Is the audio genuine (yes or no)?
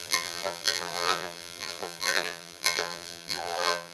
no